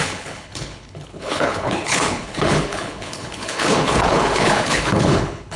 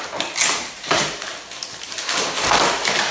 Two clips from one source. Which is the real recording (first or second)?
second